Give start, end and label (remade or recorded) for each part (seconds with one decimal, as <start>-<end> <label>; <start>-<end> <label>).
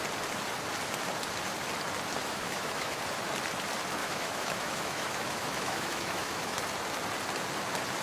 0.0-2.2 recorded; 2.2-3.0 remade; 3.0-4.0 recorded; 4.0-6.6 remade; 6.6-8.0 recorded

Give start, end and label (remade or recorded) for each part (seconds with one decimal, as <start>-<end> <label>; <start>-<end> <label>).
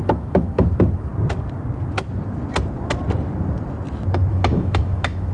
0.0-1.1 remade; 1.1-4.3 recorded; 4.3-5.3 remade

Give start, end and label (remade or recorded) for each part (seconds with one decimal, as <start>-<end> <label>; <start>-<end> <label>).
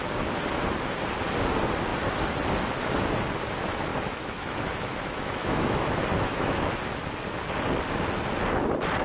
0.0-3.9 recorded; 3.9-6.6 remade; 6.6-9.0 recorded